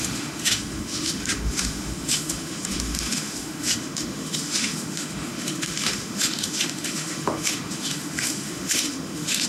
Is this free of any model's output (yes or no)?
no